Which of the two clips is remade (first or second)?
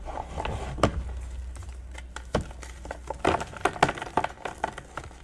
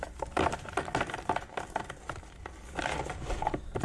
second